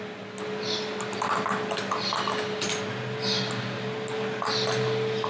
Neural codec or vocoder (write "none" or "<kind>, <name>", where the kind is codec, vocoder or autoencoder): none